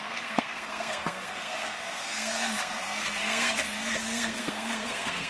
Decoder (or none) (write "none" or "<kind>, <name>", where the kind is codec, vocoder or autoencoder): codec, SNAC